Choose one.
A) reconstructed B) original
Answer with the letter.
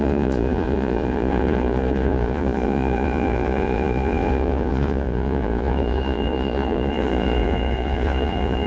A